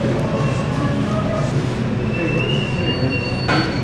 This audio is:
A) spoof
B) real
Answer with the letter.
B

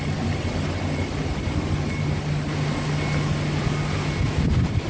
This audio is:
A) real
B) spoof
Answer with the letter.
A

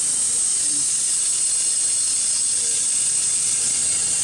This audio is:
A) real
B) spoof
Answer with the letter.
A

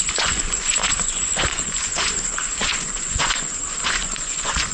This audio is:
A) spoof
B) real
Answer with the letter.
A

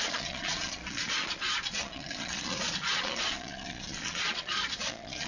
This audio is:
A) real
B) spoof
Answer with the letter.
B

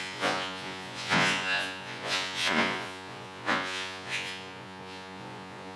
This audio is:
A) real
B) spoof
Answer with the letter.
B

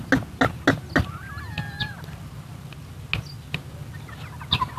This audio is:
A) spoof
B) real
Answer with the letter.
B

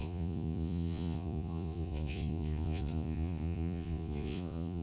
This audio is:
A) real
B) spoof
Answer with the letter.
B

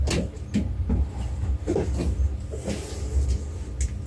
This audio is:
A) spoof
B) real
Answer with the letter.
B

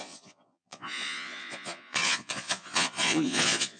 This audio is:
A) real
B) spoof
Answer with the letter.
B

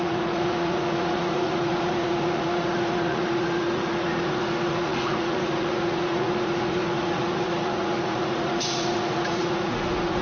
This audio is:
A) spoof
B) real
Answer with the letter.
A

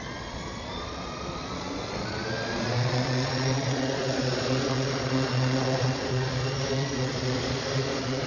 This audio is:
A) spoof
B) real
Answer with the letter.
A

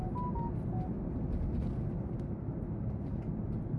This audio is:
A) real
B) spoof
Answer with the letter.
A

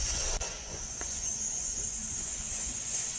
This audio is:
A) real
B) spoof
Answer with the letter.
B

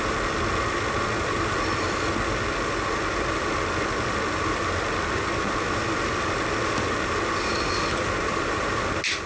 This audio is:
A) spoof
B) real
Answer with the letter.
B